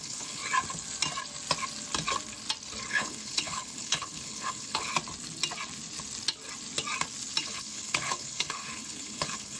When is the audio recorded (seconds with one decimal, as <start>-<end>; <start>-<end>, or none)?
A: 0.4-2.9; 4.9-7.4